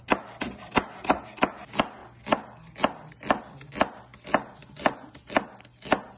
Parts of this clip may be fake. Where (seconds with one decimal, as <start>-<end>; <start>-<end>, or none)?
4.1-5.1